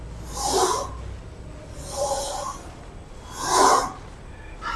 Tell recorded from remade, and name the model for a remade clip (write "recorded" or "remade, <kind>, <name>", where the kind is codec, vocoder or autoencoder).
recorded